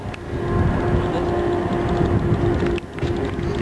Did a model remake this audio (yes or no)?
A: no